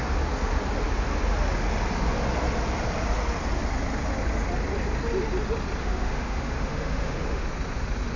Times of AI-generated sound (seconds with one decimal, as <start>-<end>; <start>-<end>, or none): 5.8-7.4